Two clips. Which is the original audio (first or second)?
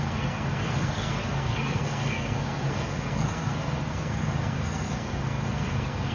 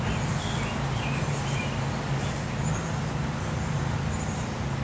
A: second